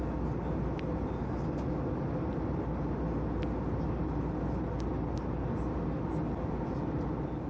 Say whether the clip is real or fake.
real